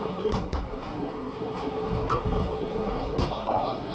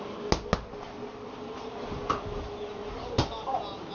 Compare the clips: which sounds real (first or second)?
second